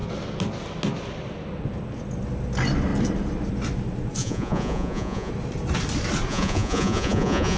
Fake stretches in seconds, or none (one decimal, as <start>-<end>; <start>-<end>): 4.2-5.3; 6.3-7.6